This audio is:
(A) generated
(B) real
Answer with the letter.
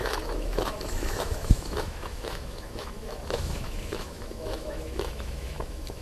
A